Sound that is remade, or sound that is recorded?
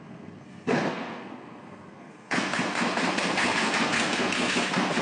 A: remade